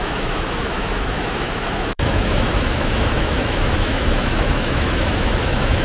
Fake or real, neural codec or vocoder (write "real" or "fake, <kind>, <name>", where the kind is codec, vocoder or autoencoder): fake, autoencoder, DAC-VAE